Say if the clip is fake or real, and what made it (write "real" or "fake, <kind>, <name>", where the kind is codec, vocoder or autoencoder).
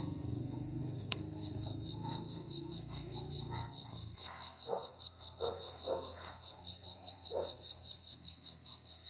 fake, codec, SNAC